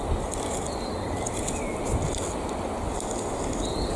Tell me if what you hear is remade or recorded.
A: recorded